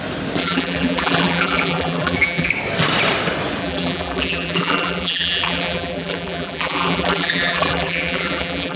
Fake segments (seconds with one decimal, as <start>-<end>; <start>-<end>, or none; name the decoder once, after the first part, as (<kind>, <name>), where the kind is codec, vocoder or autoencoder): 0.4-2.5 (vocoder, BigVGAN v2); 3.6-8.8